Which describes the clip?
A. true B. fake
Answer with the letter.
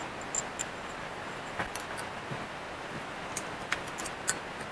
A